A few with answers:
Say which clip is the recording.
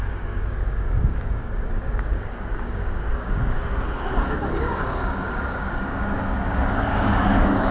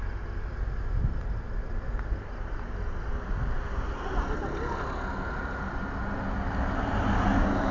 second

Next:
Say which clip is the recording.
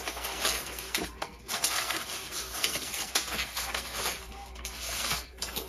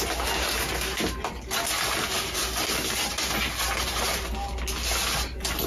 second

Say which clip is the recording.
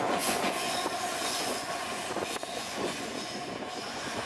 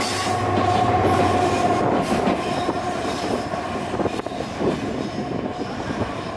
second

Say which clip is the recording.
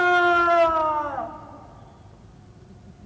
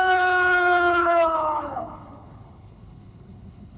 first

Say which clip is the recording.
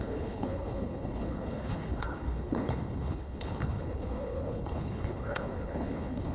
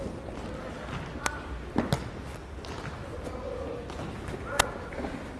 second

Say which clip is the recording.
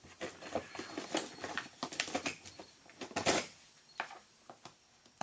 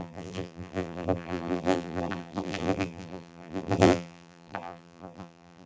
first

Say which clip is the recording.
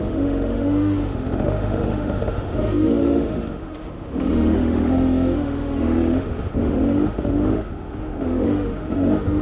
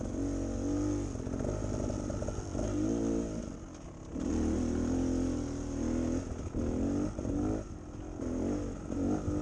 second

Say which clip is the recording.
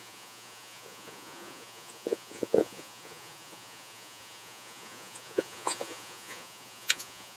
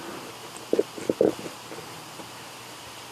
second